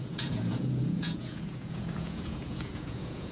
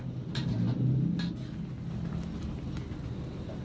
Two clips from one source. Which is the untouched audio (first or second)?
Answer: second